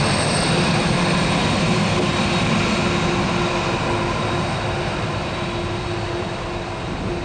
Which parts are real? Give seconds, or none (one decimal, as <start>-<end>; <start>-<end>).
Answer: 0.0-1.4; 2.2-7.2